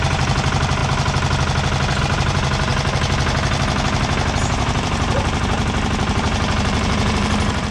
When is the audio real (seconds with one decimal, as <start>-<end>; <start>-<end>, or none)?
0.8-2.0; 2.7-4.4